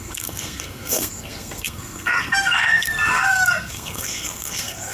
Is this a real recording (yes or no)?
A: no